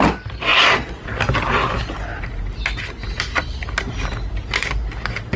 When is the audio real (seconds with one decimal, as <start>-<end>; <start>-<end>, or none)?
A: 0.0-0.5; 1.2-2.1; 2.8-5.4